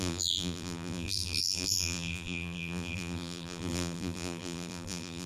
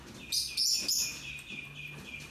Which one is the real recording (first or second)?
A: second